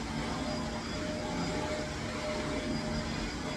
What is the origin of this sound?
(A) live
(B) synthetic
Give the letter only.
A